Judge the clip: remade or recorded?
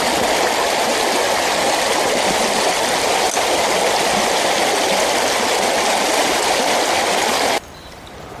recorded